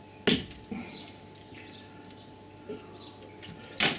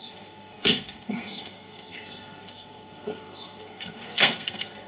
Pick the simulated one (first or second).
second